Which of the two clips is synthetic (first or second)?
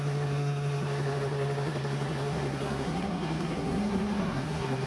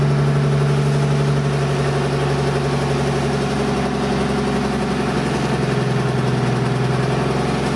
first